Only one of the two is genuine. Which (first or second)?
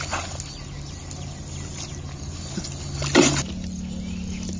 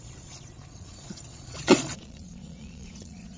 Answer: first